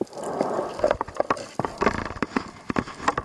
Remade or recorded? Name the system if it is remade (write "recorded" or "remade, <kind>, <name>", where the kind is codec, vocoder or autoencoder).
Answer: recorded